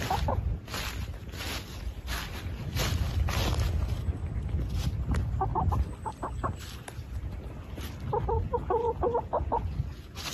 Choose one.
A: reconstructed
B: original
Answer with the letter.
B